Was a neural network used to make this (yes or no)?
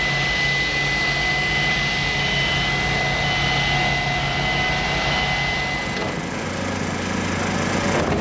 no